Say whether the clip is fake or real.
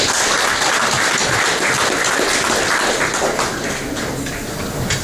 real